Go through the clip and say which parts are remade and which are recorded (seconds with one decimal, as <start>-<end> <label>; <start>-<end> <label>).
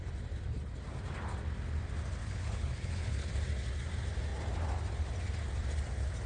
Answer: 0.0-2.2 recorded; 2.2-3.3 remade; 3.3-6.3 recorded